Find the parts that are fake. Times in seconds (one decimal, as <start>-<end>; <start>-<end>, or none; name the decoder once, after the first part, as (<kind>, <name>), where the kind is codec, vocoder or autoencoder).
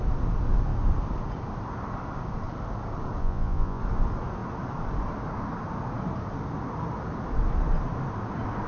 3.2-3.8 (vocoder, Vocos)